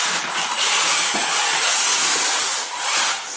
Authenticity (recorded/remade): recorded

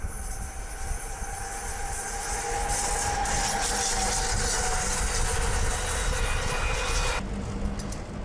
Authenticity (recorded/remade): recorded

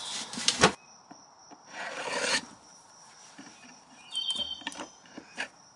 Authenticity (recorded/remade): remade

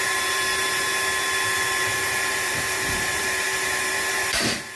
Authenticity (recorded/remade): remade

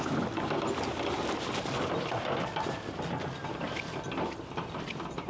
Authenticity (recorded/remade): recorded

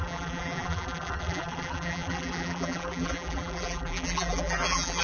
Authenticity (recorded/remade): remade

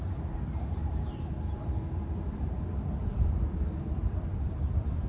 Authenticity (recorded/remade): recorded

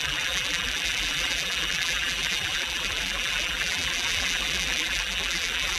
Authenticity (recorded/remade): remade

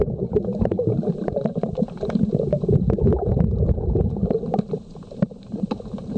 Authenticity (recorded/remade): remade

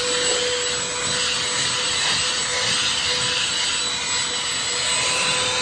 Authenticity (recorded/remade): recorded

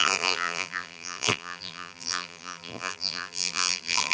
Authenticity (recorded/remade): remade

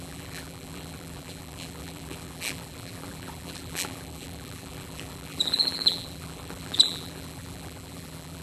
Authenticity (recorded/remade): remade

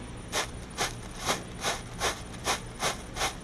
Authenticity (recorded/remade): recorded